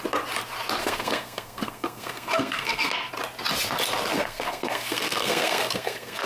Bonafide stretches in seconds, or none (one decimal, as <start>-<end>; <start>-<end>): 0.0-0.8; 3.1-4.1